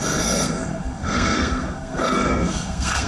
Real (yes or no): no